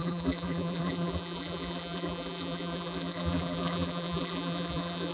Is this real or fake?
fake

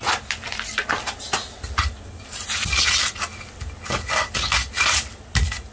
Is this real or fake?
real